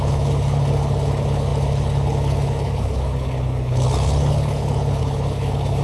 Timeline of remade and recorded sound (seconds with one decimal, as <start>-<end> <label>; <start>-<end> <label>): 0.0-5.8 remade